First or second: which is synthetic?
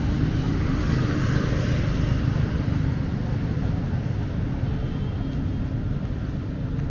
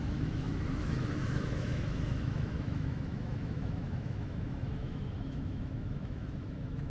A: second